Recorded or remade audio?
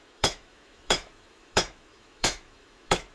remade